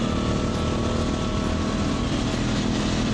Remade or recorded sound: recorded